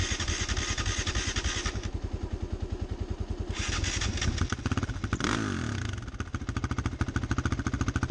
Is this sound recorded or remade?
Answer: recorded